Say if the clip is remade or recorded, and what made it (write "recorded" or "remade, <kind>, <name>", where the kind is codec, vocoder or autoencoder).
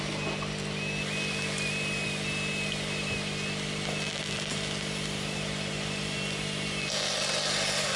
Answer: recorded